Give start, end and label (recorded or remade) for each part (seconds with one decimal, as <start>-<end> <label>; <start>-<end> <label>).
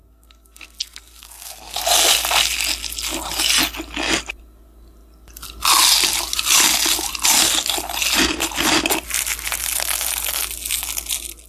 0.0-1.8 remade; 1.8-11.5 recorded